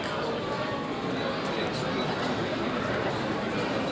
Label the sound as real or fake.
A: real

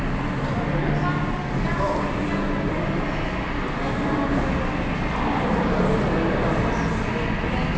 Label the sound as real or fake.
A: real